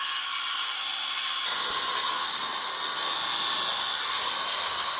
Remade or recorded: recorded